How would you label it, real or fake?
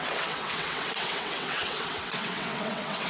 fake